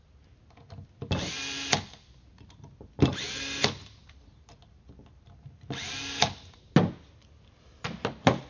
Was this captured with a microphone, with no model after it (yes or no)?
yes